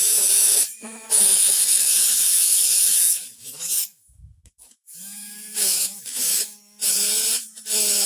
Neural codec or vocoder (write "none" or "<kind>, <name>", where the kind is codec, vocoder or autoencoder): autoencoder, DAC-VAE